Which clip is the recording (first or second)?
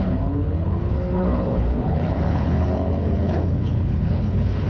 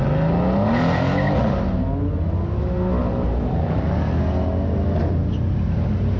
second